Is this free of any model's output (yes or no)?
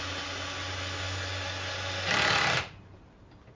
yes